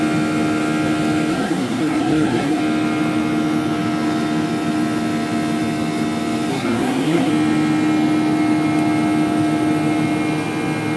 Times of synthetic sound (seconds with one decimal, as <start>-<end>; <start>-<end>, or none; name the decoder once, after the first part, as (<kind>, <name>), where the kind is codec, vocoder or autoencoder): 1.3-2.6 (codec, SNAC); 6.5-7.3